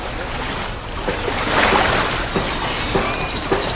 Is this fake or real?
real